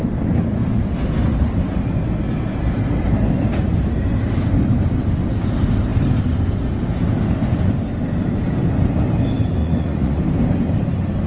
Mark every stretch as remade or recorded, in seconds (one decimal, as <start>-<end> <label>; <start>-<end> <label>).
0.0-9.6 recorded; 9.6-10.2 remade; 10.2-11.3 recorded